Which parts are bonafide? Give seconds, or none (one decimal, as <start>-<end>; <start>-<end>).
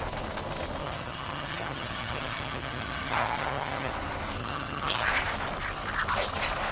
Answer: 0.0-0.8; 3.9-4.4; 5.1-6.7